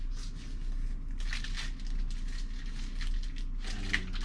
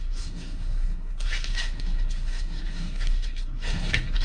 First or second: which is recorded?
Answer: first